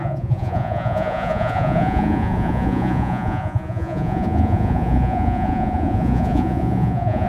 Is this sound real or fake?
fake